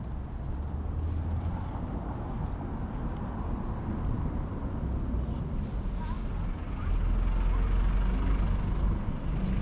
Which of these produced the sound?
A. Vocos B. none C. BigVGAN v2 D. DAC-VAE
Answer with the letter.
B